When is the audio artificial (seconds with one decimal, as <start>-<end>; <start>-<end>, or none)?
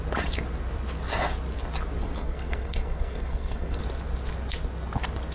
2.2-3.8